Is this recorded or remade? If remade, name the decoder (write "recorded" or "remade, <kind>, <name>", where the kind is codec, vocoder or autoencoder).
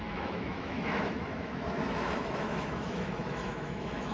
remade, autoencoder, DAC-VAE